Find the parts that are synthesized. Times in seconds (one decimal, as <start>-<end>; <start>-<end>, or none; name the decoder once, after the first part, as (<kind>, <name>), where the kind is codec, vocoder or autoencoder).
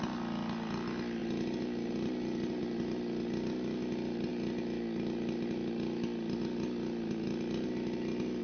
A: none